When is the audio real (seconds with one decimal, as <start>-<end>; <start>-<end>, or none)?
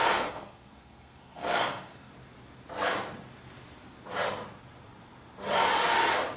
2.1-6.4